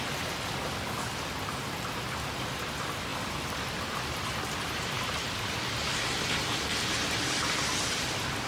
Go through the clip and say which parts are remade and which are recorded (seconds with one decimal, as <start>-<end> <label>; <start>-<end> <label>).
0.0-8.5 recorded